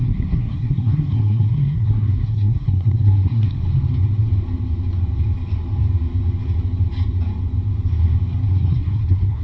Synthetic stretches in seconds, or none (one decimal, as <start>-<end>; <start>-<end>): 0.0-3.6; 8.5-9.4